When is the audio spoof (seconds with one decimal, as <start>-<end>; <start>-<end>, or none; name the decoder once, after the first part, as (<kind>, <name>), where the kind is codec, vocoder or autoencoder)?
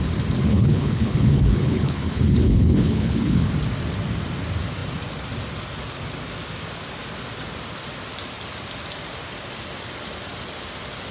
0.5-3.5 (codec, HILCodec)